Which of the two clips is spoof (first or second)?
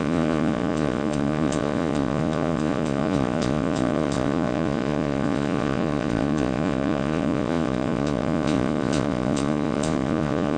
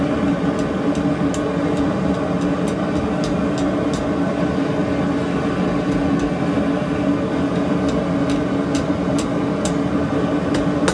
first